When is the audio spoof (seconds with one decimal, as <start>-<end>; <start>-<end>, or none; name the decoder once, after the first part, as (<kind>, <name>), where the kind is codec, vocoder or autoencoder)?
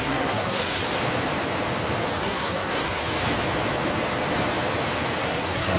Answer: 0.0-0.8 (codec, SNAC); 2.2-3.0; 5.2-5.8